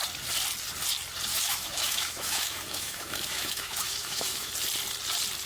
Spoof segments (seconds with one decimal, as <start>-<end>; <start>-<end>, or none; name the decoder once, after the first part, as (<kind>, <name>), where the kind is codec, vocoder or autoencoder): 1.3-4.5 (autoencoder, DAC-VAE)